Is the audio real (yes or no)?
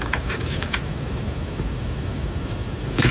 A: no